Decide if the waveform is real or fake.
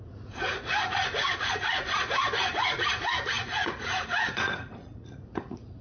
fake